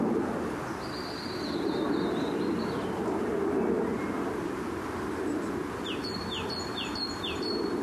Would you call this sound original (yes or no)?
yes